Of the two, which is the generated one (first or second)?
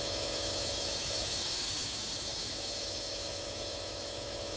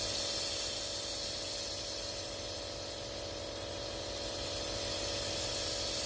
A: first